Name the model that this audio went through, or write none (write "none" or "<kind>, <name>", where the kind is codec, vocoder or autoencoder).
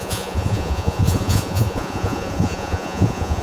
vocoder, Vocos